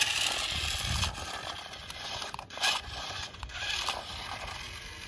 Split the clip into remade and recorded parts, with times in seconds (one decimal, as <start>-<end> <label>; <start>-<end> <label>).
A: 0.0-1.8 recorded; 1.8-3.7 remade; 3.7-5.1 recorded